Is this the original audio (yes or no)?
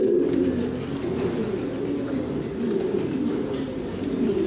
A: yes